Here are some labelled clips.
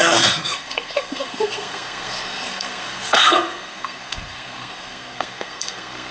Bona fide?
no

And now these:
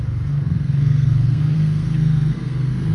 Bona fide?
no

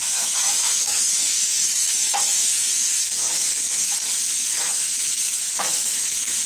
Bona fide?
no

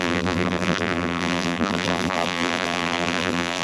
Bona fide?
no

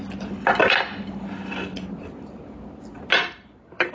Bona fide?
yes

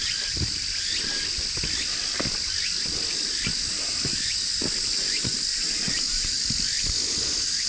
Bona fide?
yes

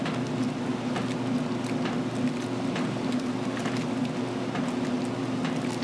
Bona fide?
yes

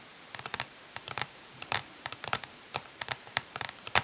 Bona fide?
no